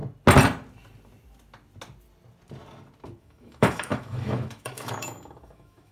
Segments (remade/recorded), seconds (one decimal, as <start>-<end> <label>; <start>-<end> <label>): 0.0-3.2 recorded; 3.2-5.9 remade